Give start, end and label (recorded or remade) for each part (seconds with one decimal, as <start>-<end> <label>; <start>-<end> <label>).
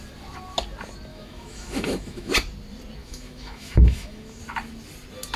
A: 0.0-1.1 recorded; 1.1-2.3 remade; 2.3-3.0 recorded; 3.0-4.4 remade; 4.4-5.4 recorded